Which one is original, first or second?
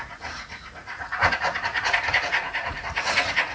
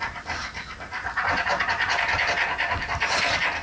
second